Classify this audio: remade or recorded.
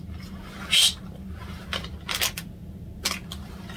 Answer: recorded